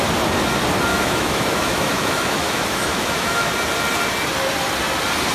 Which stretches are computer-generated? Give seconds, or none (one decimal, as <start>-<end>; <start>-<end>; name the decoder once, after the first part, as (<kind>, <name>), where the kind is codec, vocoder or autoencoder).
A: 0.9-3.5 (autoencoder, DAC-VAE)